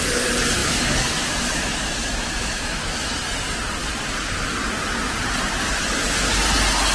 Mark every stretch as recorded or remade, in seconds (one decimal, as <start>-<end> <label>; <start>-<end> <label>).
0.0-0.6 recorded; 0.6-3.2 remade; 3.2-6.9 recorded

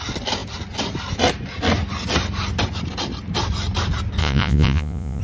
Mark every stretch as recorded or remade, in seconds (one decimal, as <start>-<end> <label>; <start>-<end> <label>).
0.0-4.2 recorded; 4.2-5.2 remade

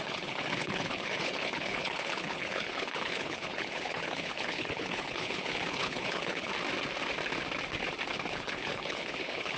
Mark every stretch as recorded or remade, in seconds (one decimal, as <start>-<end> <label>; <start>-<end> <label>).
0.0-6.5 remade; 6.5-8.3 recorded; 8.3-9.6 remade

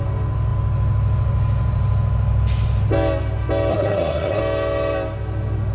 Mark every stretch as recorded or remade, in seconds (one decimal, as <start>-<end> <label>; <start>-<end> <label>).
0.0-3.7 recorded; 3.7-4.4 remade; 4.4-5.7 recorded

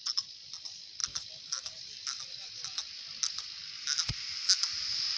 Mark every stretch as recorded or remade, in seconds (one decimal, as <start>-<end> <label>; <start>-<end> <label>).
0.0-5.2 recorded